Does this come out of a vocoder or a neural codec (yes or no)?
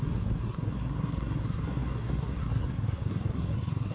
yes